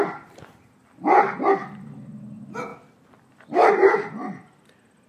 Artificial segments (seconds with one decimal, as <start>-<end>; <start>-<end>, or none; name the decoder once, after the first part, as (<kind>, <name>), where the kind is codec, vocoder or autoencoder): 2.7-3.7 (vocoder, BigVGAN v2)